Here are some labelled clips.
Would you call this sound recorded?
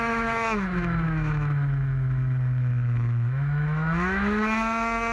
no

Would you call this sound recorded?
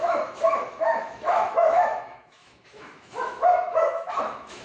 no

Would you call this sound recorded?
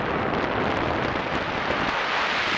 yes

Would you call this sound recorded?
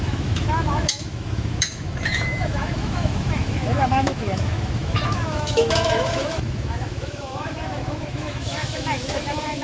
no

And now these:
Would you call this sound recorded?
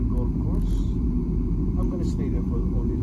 yes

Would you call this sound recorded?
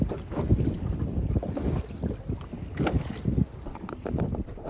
yes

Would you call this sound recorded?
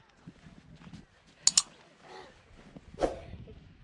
yes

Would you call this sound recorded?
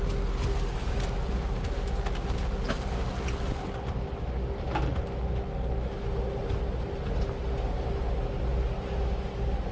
yes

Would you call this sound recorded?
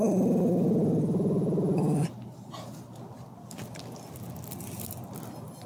yes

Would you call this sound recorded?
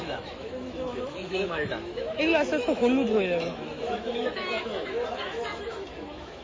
no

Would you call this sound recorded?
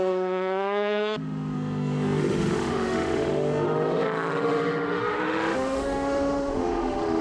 no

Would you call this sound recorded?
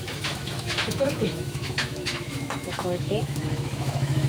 no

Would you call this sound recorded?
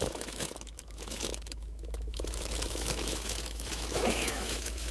no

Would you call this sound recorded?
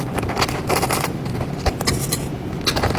yes